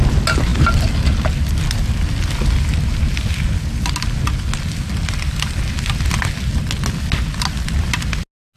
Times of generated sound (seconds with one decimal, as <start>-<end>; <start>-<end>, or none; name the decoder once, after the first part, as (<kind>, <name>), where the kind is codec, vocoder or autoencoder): none